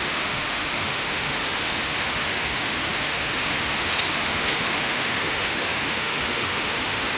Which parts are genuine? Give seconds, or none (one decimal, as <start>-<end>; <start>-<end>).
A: none